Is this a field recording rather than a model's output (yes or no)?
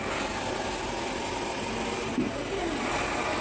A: yes